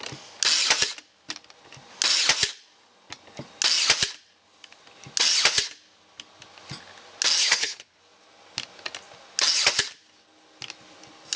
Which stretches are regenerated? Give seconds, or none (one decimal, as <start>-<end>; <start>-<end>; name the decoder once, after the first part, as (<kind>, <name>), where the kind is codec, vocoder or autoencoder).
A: 7.4-8.0 (codec, HILCodec)